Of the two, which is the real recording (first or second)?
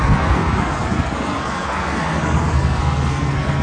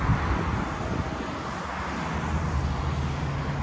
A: second